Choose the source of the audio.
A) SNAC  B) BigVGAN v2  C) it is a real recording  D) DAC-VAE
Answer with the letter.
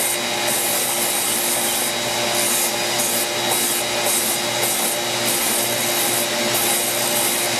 C